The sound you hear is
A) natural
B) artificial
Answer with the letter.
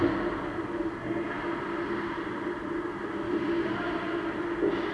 A